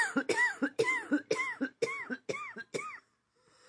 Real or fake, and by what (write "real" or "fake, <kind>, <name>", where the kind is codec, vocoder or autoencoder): real